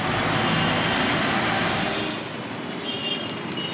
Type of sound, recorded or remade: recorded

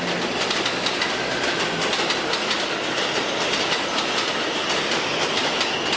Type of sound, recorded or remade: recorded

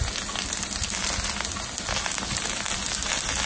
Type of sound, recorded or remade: recorded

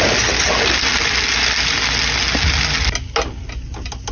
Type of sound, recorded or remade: recorded